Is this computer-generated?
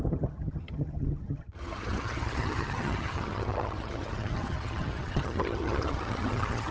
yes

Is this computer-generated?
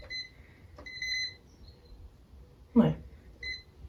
no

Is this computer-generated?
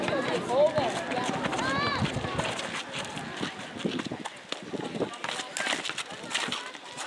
no